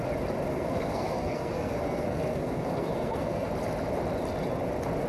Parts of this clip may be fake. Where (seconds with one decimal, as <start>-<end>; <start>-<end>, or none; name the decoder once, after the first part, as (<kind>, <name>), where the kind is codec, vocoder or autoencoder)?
0.5-3.5 (codec, SNAC)